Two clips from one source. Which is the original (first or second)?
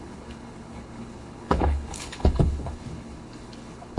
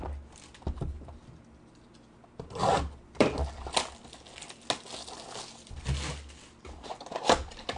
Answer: second